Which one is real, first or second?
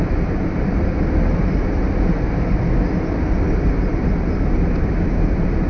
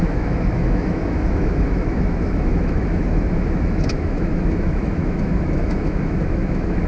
first